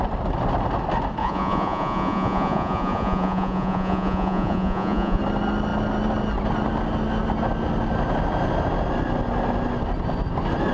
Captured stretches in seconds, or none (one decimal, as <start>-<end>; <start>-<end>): 0.0-1.2; 5.2-10.7